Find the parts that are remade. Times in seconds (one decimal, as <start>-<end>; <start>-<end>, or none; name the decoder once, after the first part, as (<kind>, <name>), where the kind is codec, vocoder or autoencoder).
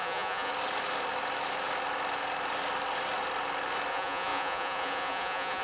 0.0-0.5 (vocoder, Vocos); 3.9-5.6